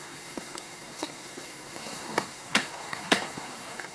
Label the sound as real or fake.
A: fake